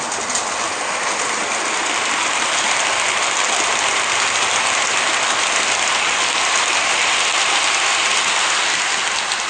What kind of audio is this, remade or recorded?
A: recorded